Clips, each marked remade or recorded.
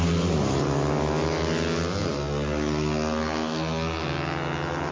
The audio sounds recorded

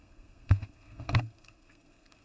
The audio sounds remade